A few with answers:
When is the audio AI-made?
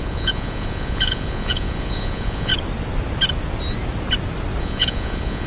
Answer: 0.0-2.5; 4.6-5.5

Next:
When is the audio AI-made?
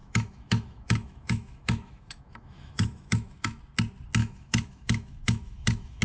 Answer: 0.0-3.6; 4.2-6.0